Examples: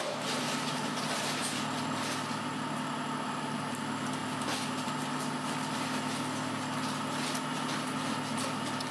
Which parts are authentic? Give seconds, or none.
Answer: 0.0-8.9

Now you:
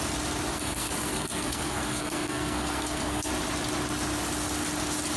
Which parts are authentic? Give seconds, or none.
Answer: 0.0-0.5; 3.3-5.2